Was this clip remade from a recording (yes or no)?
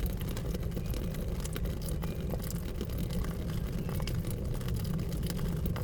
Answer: no